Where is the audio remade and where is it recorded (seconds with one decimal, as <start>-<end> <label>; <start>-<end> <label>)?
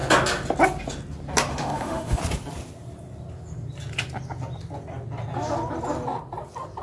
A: 0.0-1.5 recorded; 1.5-2.2 remade; 2.2-6.8 recorded